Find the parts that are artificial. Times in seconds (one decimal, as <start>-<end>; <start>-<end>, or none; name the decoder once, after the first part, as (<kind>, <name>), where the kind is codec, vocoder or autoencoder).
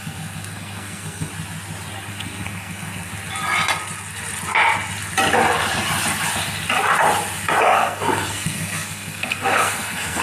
0.0-1.3 (codec, SNAC); 2.1-3.1; 7.6-10.2